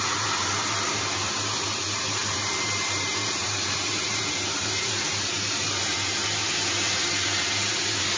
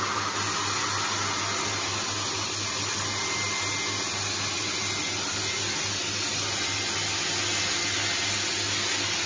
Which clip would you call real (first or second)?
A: second